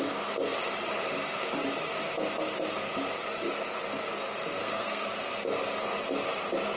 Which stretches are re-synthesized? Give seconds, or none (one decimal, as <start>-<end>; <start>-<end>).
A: 4.6-5.1